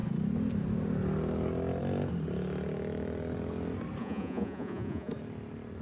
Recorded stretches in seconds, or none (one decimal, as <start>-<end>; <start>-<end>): 0.0-4.0; 5.1-5.8